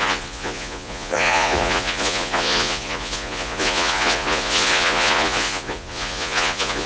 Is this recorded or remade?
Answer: remade